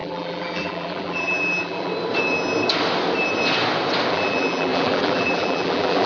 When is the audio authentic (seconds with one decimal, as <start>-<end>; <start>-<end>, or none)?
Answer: 1.9-4.1